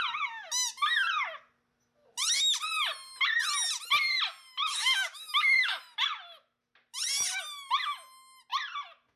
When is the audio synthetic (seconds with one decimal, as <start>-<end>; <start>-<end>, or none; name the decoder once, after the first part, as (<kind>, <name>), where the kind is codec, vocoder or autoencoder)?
4.6-5.8 (autoencoder, DAC-VAE)